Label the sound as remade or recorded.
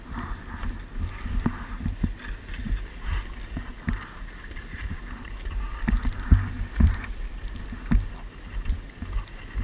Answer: recorded